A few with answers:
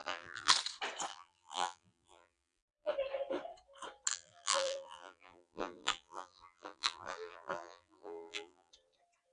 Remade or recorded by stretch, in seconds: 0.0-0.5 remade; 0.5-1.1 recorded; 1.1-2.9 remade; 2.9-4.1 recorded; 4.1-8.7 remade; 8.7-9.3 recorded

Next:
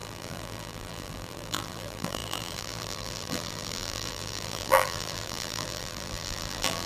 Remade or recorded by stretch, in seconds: 0.0-6.9 remade

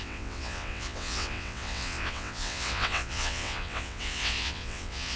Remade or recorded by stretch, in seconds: 0.0-5.2 remade